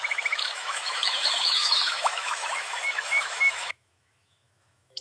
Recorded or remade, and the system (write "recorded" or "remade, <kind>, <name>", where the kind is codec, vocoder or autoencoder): remade, autoencoder, DAC-VAE